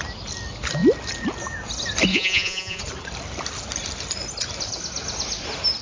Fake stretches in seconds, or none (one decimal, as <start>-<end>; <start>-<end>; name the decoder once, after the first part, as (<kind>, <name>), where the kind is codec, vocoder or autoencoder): 2.1-2.8 (vocoder, Vocos)